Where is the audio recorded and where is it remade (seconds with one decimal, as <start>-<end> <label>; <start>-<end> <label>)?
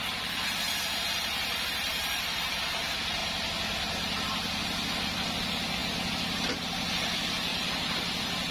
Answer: 0.0-1.9 recorded; 1.9-2.8 remade; 2.8-7.5 recorded; 7.5-8.5 remade